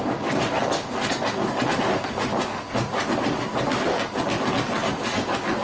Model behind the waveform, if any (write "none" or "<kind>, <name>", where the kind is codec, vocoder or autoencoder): none